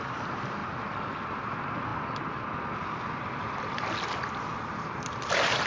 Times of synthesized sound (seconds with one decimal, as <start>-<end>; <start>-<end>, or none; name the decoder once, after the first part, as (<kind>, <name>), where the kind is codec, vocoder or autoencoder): none